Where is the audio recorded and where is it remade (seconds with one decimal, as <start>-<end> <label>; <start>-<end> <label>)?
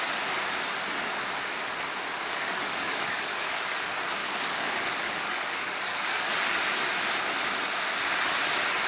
0.0-2.2 recorded; 2.2-3.8 remade; 3.8-4.2 recorded; 4.2-6.6 remade; 6.6-8.9 recorded